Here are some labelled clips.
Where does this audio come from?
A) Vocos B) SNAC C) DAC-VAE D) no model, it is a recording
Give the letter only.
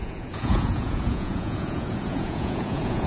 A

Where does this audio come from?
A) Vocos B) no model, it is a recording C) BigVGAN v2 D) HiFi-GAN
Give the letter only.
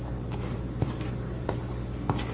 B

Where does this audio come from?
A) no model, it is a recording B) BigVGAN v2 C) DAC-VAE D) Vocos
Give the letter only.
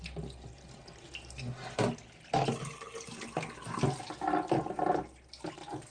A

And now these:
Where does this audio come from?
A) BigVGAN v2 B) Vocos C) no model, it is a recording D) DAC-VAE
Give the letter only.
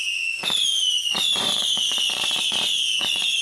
B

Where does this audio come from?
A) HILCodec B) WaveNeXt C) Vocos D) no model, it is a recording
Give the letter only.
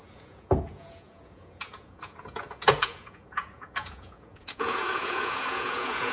C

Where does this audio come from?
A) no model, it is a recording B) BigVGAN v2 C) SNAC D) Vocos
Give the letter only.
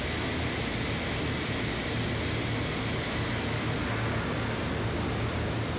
A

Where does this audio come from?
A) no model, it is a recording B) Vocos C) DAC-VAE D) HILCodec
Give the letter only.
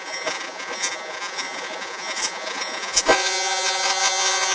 B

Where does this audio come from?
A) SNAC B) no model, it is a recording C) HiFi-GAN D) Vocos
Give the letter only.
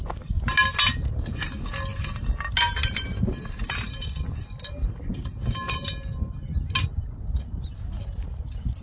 B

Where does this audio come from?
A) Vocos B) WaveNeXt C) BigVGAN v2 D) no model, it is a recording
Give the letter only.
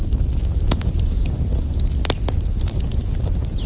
D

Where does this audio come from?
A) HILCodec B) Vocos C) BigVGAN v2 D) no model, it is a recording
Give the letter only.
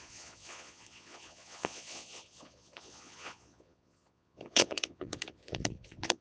B